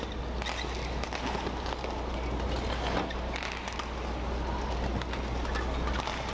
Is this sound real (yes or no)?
yes